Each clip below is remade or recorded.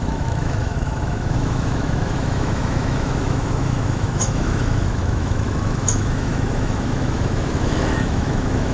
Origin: remade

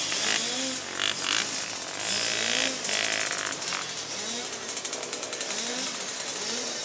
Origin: recorded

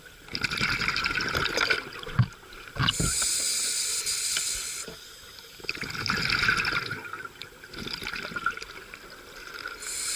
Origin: recorded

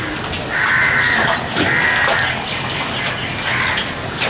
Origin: recorded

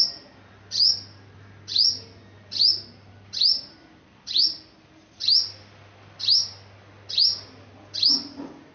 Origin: recorded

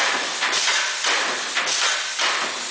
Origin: recorded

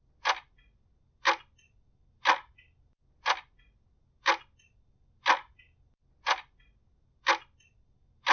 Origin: recorded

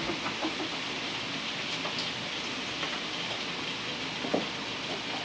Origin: remade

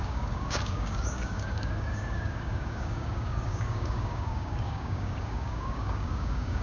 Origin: remade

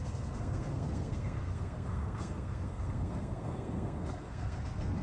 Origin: remade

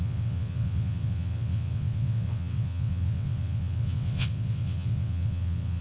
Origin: remade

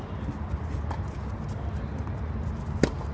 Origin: recorded